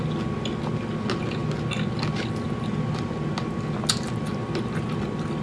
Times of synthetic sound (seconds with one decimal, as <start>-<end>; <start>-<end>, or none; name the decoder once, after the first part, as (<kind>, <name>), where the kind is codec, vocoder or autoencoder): none